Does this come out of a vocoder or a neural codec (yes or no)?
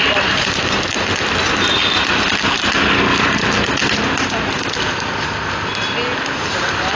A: no